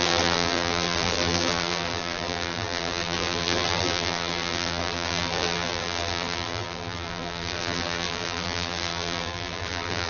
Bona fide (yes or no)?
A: no